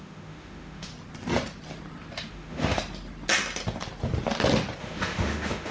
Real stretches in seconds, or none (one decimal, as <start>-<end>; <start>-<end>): 0.9-2.3; 2.8-4.8